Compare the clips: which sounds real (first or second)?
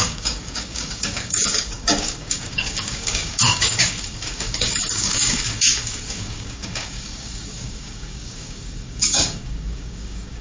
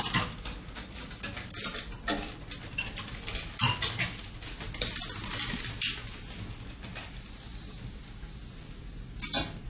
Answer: second